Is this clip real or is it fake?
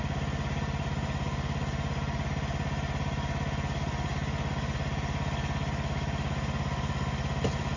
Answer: real